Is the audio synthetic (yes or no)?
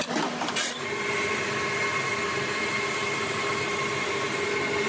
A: no